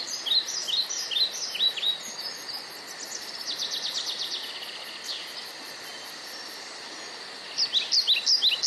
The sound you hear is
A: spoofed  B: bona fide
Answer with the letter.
B